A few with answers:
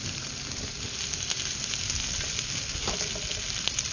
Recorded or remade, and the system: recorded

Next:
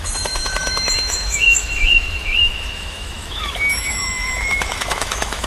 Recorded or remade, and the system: remade, autoencoder, DAC-VAE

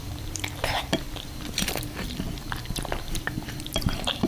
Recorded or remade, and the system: remade, vocoder, BigVGAN v2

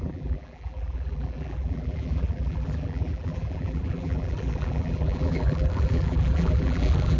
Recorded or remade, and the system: remade, vocoder, BigVGAN v2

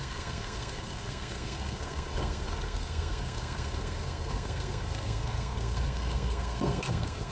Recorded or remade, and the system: remade, codec, SNAC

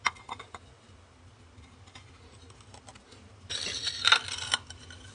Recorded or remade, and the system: recorded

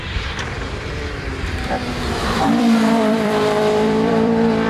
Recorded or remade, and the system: remade, vocoder, BigVGAN v2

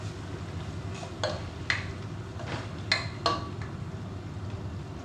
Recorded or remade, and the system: recorded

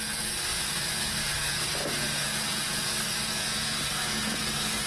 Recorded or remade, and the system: recorded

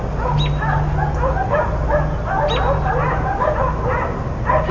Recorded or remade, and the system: recorded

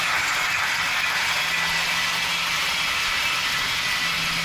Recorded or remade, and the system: recorded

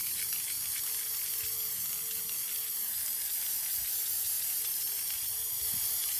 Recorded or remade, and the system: recorded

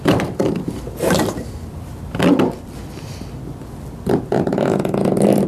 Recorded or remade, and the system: recorded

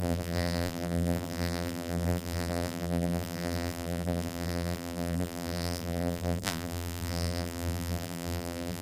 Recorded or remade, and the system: remade, vocoder, BigVGAN v2